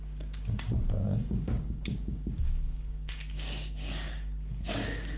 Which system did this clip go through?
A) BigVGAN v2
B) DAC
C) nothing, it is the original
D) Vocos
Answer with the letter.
B